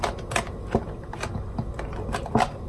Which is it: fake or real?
real